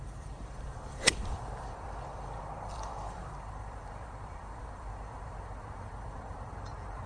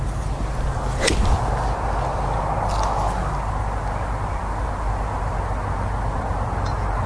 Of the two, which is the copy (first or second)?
first